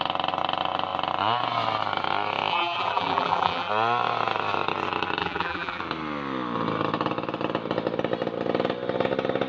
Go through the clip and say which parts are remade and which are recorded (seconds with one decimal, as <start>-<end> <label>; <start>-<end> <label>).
0.0-2.5 recorded; 2.5-3.7 remade; 3.7-5.2 recorded; 5.2-5.8 remade; 5.8-9.5 recorded